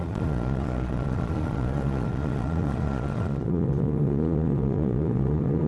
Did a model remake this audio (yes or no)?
yes